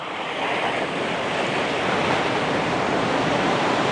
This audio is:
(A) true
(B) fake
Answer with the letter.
A